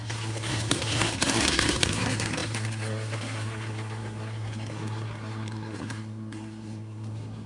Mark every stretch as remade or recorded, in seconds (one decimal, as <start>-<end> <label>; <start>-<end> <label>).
0.0-7.5 remade